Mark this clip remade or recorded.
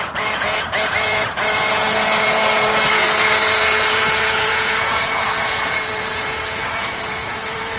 remade